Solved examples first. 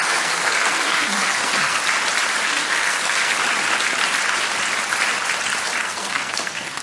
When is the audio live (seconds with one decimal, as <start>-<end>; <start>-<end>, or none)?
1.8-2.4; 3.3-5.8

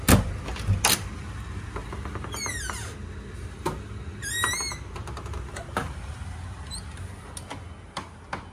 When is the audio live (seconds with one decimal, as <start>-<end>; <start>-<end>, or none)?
0.0-1.8; 2.4-5.8; 7.0-8.5

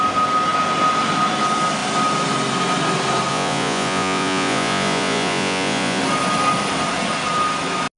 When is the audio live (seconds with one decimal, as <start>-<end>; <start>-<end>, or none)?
0.0-3.3; 6.0-8.0